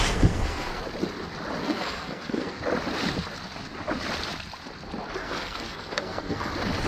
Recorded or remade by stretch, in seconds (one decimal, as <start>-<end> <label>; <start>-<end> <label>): 0.0-0.8 remade; 0.8-1.6 recorded; 1.6-2.6 remade; 2.6-5.2 recorded; 5.2-6.5 remade; 6.5-6.9 recorded